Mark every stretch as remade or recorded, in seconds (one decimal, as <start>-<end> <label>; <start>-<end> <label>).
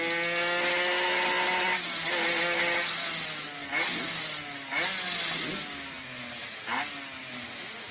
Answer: 0.0-7.9 recorded